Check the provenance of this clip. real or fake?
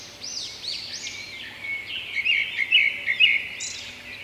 real